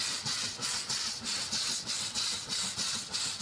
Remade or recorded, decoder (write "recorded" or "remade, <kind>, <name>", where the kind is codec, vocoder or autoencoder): remade, vocoder, WaveNeXt